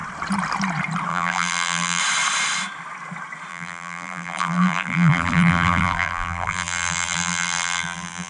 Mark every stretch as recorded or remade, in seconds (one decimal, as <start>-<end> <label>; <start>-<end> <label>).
0.0-1.1 recorded; 1.1-2.0 remade; 2.0-3.5 recorded; 3.5-8.3 remade